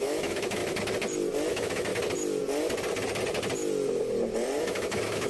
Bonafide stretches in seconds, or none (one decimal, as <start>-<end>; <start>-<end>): 0.6-1.5; 1.9-4.6

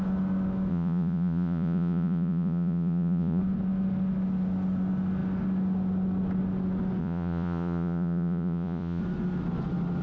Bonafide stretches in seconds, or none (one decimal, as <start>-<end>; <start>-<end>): 0.0-0.7; 3.4-7.0; 9.0-10.0

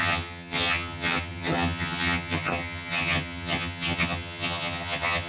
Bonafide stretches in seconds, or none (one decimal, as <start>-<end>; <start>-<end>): none